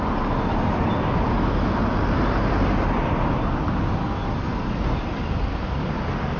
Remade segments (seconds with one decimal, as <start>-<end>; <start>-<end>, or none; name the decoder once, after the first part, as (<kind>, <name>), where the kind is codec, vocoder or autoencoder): none